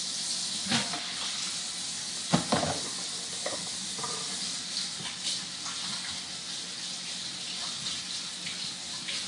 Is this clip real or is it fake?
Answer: real